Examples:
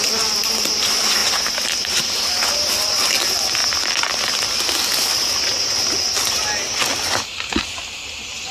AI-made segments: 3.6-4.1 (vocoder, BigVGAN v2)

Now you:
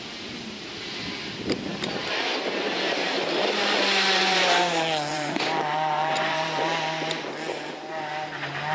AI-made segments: 1.7-4.5 (vocoder, BigVGAN v2); 5.1-6.6

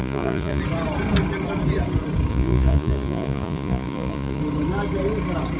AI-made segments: 0.0-0.6 (vocoder, Vocos); 2.3-4.4

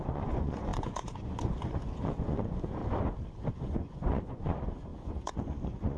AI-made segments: 0.0-2.8 (vocoder, Vocos); 3.5-6.0

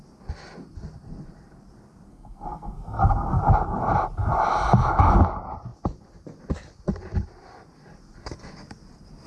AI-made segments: 2.1-3.4 (codec, SNAC)

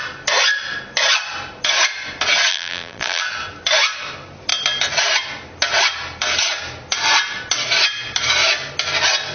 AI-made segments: 2.5-3.2 (vocoder, BigVGAN v2)